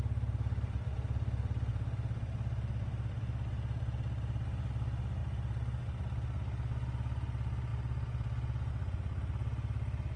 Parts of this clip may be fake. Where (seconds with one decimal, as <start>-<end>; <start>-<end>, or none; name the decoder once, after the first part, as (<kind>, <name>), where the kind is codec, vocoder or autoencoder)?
1.7-4.7 (vocoder, BigVGAN v2); 5.2-5.8; 7.7-8.7